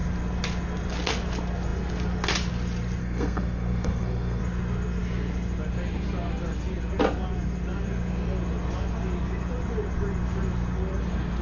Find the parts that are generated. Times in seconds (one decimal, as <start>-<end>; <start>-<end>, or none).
3.0-4.4